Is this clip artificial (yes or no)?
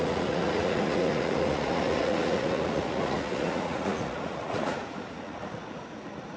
yes